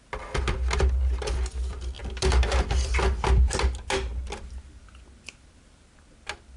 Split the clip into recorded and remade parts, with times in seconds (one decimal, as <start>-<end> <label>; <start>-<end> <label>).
0.0-6.6 recorded